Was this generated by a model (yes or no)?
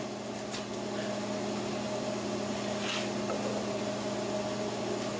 no